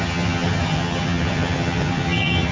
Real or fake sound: fake